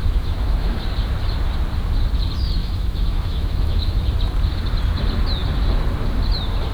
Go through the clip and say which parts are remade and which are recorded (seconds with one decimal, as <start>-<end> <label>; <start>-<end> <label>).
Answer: 0.0-0.8 remade; 0.8-2.6 recorded; 2.6-4.1 remade; 4.1-6.7 recorded